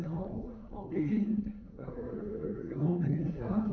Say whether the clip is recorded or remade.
remade